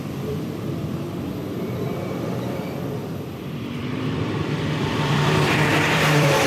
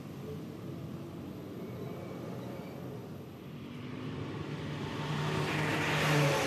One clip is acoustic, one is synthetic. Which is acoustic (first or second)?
second